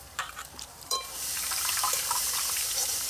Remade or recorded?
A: remade